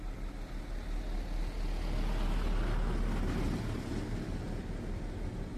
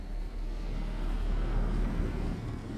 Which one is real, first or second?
first